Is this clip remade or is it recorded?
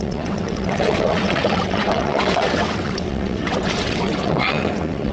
remade